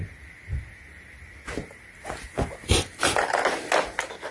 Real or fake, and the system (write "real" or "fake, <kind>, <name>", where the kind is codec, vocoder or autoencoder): real